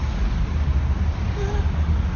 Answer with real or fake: real